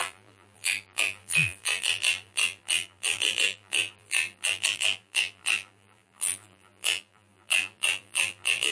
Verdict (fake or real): fake